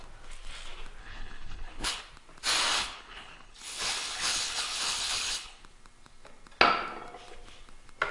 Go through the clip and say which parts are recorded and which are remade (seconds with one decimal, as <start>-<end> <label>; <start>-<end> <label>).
0.0-1.0 recorded; 1.0-2.0 remade; 2.0-2.7 recorded; 2.7-5.6 remade; 5.6-8.1 recorded